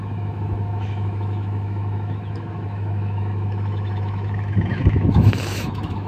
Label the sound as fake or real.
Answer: fake